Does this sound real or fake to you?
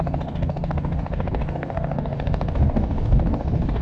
fake